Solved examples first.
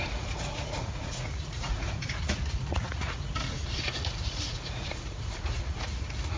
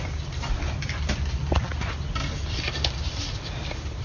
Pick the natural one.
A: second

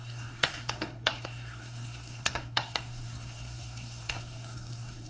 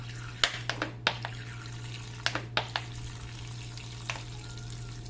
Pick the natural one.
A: second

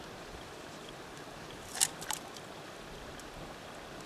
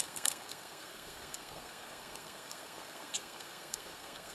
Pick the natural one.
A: first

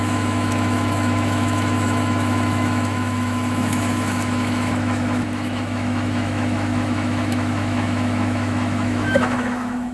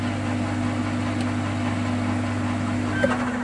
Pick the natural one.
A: second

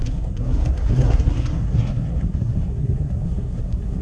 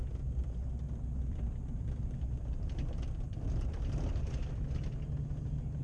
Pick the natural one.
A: second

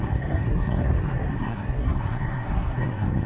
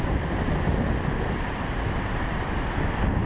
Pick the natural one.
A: second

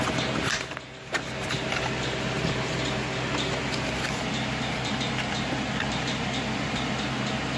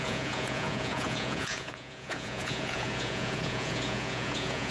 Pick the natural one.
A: first